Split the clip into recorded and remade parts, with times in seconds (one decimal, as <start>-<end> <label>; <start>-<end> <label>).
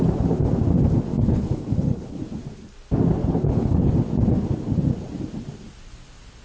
0.0-1.1 recorded; 1.1-2.2 remade; 2.2-3.2 recorded; 3.2-3.9 remade; 3.9-6.4 recorded